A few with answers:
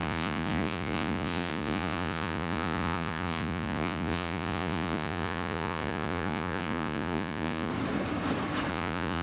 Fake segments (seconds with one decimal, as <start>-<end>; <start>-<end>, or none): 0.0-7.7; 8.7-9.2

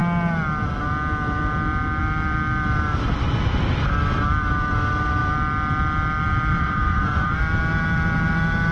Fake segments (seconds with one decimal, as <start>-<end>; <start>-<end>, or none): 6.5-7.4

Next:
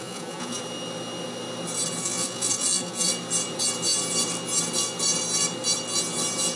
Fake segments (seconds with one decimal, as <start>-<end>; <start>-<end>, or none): 0.0-0.6; 2.0-3.1